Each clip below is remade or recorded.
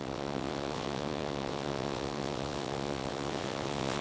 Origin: remade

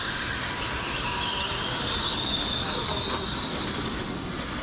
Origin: recorded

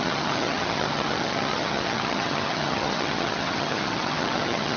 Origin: remade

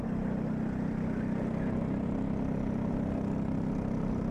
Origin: recorded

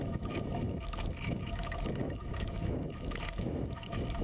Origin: remade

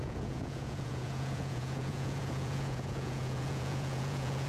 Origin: remade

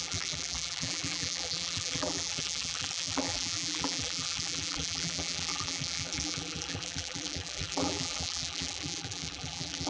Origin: remade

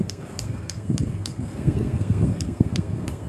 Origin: remade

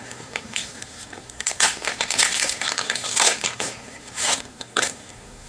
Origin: remade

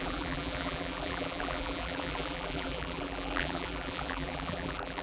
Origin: remade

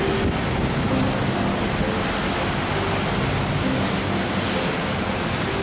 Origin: recorded